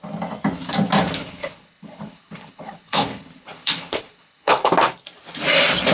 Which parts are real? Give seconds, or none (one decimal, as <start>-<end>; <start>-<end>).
0.0-1.2; 4.7-5.9